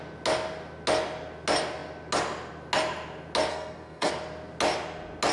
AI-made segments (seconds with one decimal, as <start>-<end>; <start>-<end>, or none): 3.5-4.1